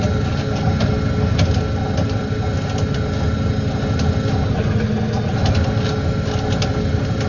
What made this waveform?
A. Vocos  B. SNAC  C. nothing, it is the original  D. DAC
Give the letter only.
C